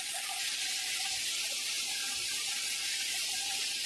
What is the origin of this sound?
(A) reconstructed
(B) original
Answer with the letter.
B